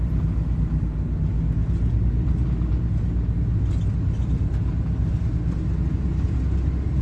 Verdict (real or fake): real